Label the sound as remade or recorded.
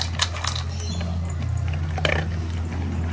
recorded